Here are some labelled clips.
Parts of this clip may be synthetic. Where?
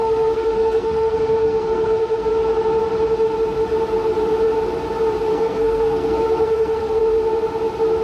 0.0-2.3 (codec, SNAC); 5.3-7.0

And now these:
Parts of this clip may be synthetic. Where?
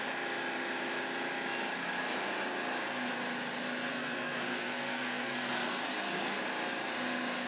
3.9-6.4 (codec, SNAC)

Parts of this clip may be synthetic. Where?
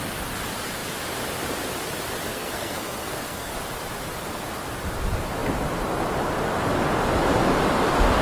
2.3-3.5 (codec, SNAC)